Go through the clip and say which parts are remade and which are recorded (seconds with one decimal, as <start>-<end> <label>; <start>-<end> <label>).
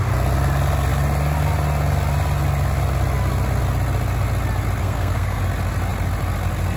0.0-4.8 recorded; 4.8-5.4 remade; 5.4-6.8 recorded